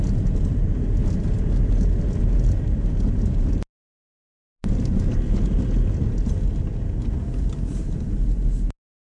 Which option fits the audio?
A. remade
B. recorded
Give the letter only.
B